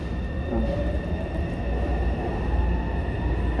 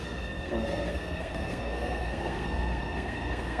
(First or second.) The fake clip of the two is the second